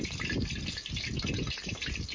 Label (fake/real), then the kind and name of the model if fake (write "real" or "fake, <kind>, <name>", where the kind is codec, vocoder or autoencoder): real